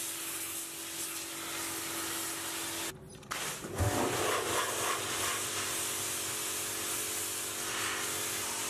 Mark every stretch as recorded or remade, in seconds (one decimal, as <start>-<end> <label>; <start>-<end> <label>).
0.0-8.7 recorded